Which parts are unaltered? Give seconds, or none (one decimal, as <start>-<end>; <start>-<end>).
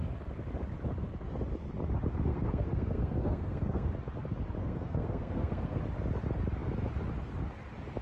0.0-2.3; 3.9-4.6; 5.8-8.0